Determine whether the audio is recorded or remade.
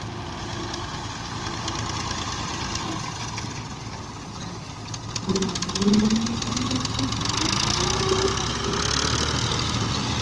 recorded